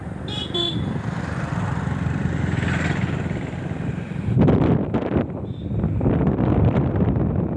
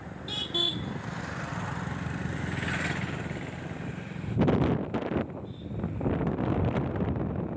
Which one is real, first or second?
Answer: second